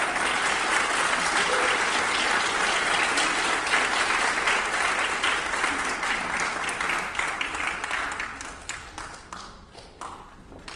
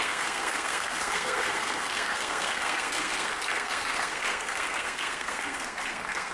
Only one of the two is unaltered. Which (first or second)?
first